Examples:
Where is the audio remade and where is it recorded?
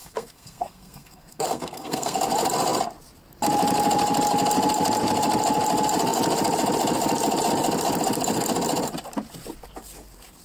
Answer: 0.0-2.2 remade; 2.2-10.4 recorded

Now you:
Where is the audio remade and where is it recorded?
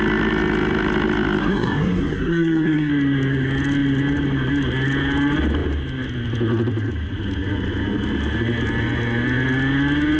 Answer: 0.0-1.4 recorded; 1.4-2.9 remade; 2.9-10.2 recorded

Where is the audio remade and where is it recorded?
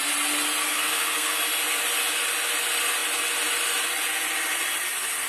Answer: 0.0-0.7 recorded; 0.7-1.4 remade; 1.4-5.3 recorded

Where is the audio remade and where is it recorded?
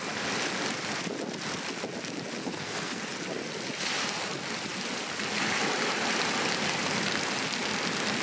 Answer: 0.0-2.4 recorded; 2.4-3.0 remade; 3.0-8.2 recorded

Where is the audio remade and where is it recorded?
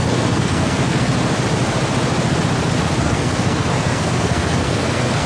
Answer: 0.0-1.1 remade; 1.1-3.0 recorded; 3.0-5.3 remade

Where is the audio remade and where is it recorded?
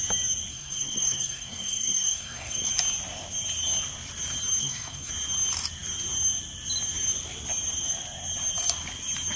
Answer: 0.0-0.5 recorded; 0.5-2.7 remade; 2.7-4.6 recorded; 4.6-5.1 remade; 5.1-9.4 recorded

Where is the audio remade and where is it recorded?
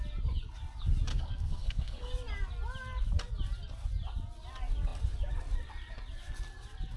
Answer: 0.0-1.1 recorded; 1.1-2.1 remade; 2.1-7.0 recorded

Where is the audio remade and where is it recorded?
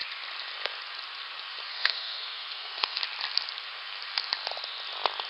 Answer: 0.0-1.7 recorded; 1.7-3.0 remade; 3.0-5.3 recorded